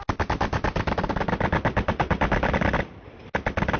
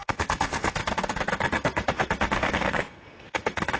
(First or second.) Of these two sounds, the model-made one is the second